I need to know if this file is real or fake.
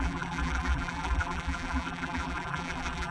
fake